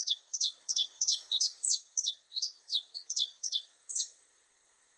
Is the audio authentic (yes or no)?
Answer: no